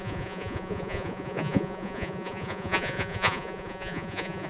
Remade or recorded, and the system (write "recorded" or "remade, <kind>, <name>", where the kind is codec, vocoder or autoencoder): remade, vocoder, Vocos